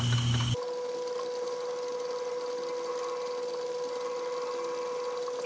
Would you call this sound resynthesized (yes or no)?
no